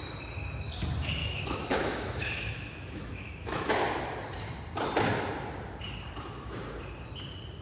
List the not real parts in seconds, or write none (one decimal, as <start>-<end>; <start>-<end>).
1.2-3.7